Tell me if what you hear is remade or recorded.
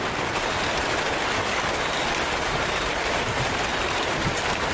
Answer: recorded